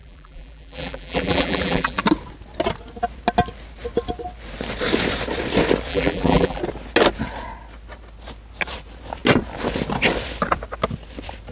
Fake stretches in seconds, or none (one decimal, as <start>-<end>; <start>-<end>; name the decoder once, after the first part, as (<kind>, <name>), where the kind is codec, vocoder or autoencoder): 0.0-2.0 (vocoder, BigVGAN v2); 5.9-6.6